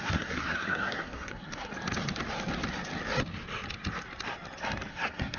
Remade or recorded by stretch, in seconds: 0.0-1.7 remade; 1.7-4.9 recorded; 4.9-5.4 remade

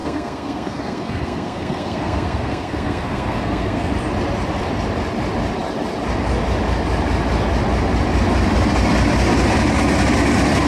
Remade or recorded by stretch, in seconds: 0.0-3.9 remade; 3.9-10.7 recorded

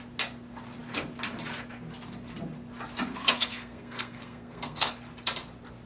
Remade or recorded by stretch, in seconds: 0.0-3.1 recorded; 3.1-4.9 remade; 4.9-5.9 recorded

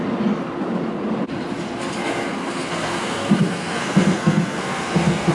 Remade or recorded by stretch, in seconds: 0.0-2.0 recorded; 2.0-5.3 remade

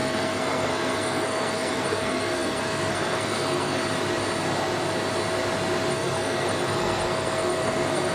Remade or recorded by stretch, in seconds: 0.0-3.8 remade; 3.8-5.9 recorded; 5.9-8.1 remade

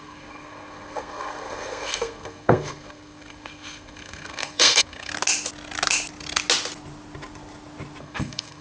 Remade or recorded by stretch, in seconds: 0.0-5.1 remade; 5.1-8.0 recorded; 8.0-8.6 remade

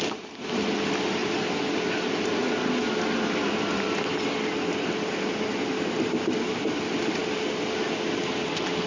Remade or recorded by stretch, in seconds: 0.0-8.9 recorded